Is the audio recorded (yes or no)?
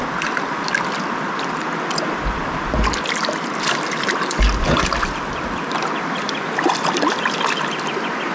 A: yes